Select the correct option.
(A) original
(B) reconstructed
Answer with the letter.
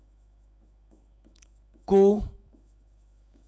B